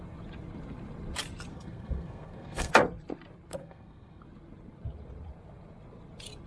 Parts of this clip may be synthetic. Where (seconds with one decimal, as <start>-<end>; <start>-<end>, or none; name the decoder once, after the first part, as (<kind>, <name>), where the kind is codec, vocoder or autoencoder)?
1.5-2.7 (codec, SNAC); 3.6-4.2